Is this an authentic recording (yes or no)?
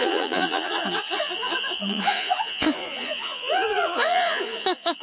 no